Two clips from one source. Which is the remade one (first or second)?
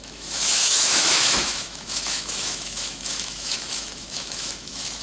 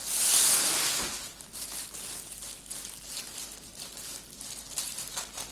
first